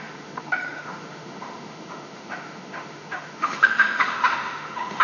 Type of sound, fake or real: fake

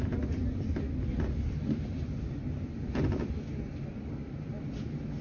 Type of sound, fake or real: real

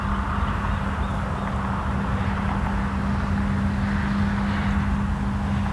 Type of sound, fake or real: real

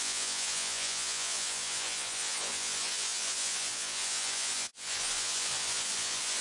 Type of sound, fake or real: fake